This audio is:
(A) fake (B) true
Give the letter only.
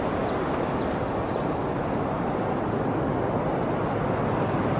B